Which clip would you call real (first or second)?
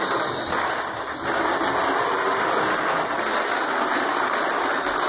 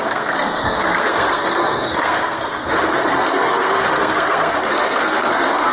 first